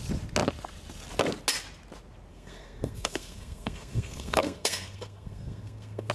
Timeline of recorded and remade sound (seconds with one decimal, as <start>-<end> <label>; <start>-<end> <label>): 0.0-2.3 recorded; 2.3-6.1 remade